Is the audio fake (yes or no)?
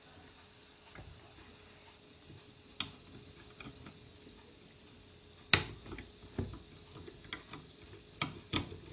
no